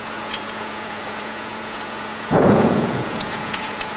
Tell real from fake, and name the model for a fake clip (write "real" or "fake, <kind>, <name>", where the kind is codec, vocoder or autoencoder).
fake, vocoder, Vocos